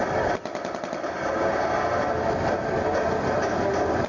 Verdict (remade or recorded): recorded